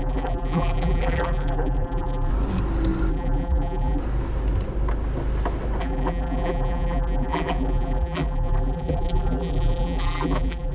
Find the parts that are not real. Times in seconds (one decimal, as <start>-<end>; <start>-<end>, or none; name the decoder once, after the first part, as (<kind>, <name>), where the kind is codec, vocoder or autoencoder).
0.0-2.3 (vocoder, BigVGAN v2); 3.1-4.0; 5.8-10.7